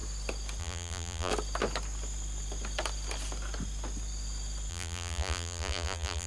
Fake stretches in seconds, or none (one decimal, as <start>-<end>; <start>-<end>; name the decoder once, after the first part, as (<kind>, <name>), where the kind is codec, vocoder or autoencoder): 0.6-1.3 (vocoder, BigVGAN v2); 4.7-6.3